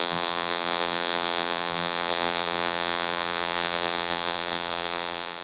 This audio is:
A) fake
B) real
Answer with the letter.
A